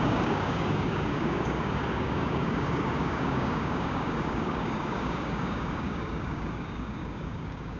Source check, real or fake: fake